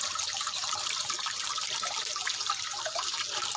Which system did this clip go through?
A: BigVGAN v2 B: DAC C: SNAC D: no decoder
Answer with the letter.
A